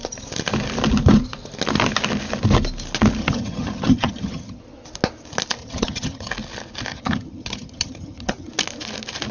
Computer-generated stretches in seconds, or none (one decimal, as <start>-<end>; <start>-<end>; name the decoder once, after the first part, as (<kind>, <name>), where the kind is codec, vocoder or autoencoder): 3.2-4.6 (vocoder, HiFi-GAN); 5.6-6.3; 6.9-8.5